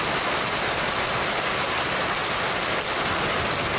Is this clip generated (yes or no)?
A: no